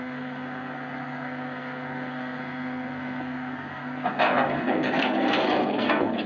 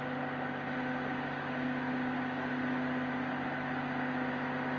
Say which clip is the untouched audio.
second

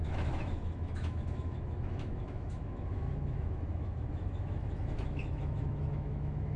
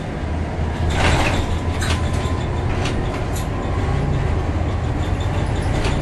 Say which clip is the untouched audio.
second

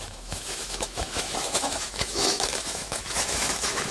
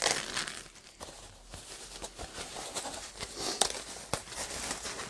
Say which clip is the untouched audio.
second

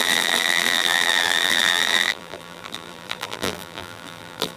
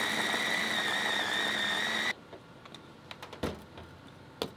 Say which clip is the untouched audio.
second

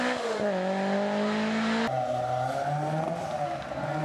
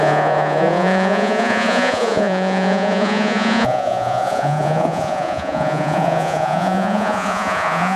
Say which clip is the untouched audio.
first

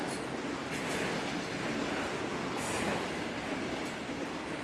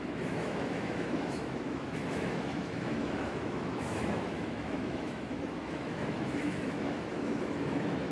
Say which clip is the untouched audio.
first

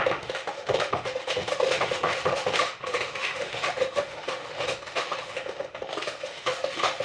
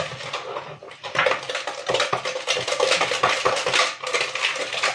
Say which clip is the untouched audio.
second